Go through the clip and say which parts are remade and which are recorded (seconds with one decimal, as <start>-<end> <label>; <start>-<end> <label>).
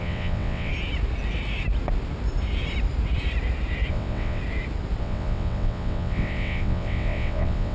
0.0-0.7 remade; 0.7-3.9 recorded; 3.9-4.4 remade; 4.4-5.0 recorded; 5.0-7.7 remade